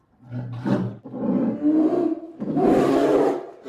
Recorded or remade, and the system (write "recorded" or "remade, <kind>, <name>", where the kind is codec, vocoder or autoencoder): recorded